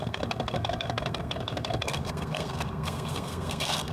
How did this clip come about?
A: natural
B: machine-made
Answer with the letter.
B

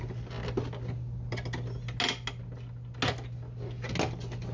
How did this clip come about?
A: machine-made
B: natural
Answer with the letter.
B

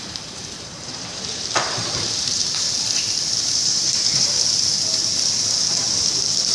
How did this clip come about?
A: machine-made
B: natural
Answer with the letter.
A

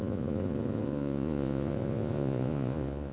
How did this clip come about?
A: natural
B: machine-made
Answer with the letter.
B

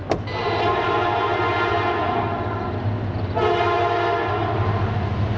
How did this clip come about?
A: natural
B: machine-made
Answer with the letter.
A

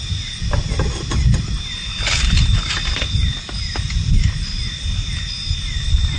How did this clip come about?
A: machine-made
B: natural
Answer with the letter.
B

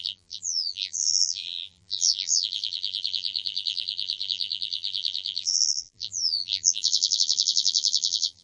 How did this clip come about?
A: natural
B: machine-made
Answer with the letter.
B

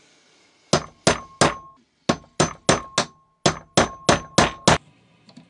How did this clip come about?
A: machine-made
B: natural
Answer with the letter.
B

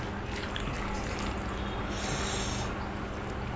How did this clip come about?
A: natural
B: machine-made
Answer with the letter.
A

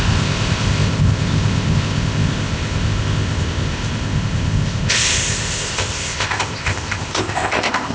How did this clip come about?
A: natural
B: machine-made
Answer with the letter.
B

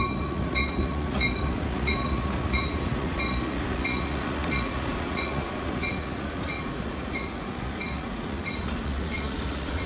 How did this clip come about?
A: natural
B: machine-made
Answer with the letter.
B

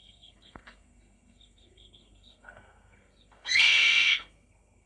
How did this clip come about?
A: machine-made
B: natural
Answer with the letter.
A